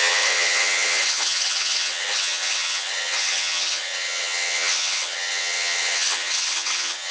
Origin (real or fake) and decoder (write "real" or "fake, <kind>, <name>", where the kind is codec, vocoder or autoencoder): fake, vocoder, HiFi-GAN